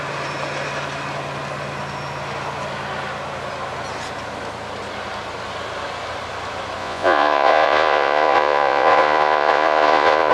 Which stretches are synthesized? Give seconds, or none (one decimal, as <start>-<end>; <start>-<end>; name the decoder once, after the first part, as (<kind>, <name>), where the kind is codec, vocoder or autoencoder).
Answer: 6.8-10.3 (vocoder, Vocos)